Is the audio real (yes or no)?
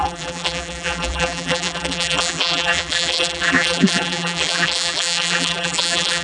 no